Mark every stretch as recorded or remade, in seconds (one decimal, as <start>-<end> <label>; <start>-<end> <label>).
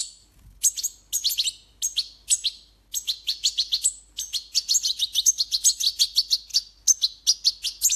0.0-8.0 recorded